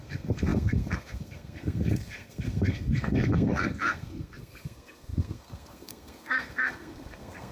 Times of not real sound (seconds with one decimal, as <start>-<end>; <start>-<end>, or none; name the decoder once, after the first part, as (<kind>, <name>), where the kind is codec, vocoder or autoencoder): 0.0-7.5 (codec, SNAC)